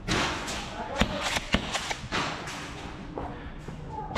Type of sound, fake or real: fake